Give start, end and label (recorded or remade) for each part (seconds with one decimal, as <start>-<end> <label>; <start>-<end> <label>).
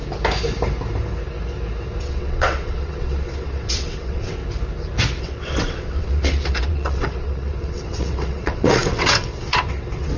0.0-2.0 recorded; 2.0-4.4 remade; 4.4-5.2 recorded; 5.2-10.2 remade